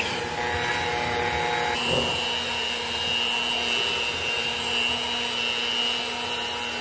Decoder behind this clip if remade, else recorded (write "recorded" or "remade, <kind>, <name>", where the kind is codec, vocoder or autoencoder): recorded